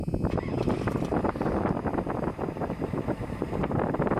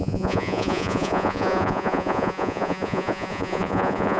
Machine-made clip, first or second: second